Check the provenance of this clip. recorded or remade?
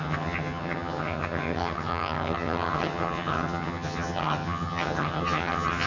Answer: remade